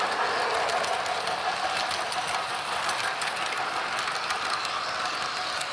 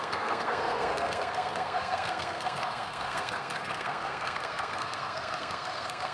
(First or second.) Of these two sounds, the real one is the first